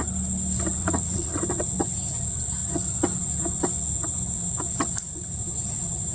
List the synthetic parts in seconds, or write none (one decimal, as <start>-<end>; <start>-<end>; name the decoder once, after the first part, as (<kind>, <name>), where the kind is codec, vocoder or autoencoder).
0.8-1.4 (vocoder, Vocos)